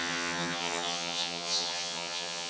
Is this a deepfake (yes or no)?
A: yes